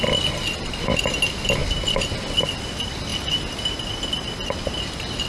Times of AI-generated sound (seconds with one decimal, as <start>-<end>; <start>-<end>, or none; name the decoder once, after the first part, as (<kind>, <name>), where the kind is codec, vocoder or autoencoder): none